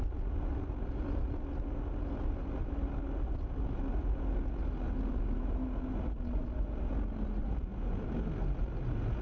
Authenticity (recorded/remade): recorded